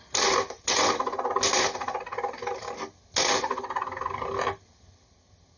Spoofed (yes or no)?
no